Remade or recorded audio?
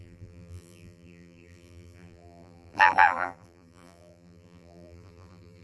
remade